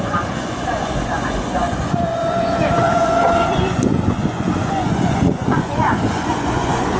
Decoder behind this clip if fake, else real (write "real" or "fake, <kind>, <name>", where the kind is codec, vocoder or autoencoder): fake, vocoder, Vocos